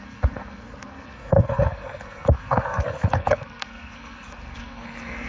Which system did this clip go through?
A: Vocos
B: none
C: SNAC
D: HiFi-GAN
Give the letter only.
C